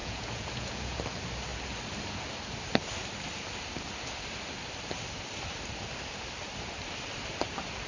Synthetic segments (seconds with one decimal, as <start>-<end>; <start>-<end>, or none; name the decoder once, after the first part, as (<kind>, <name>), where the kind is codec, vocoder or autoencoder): 0.0-1.0 (vocoder, Vocos)